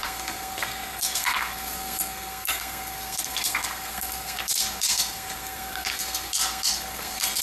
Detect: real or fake fake